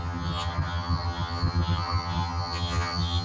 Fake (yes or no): yes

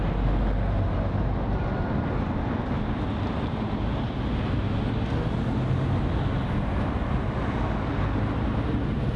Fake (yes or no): no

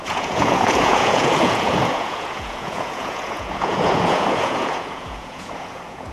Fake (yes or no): yes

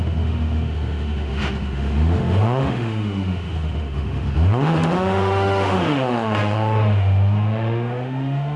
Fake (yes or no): yes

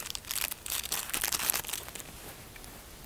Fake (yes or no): no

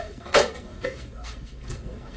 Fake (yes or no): yes